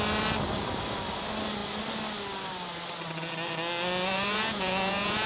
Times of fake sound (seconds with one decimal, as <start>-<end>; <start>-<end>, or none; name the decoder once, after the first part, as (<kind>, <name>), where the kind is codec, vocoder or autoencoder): 4.1-5.3 (vocoder, Vocos)